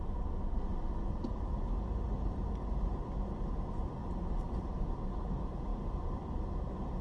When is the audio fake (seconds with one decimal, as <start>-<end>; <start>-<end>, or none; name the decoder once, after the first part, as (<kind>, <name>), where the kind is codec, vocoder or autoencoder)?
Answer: 4.0-4.9 (vocoder, BigVGAN v2); 5.7-6.2